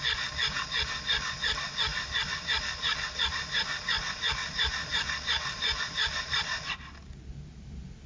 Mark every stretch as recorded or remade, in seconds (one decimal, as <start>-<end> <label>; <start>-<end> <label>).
0.0-1.9 recorded; 1.9-6.8 remade; 6.8-8.1 recorded